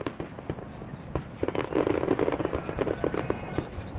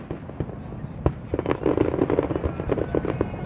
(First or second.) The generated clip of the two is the first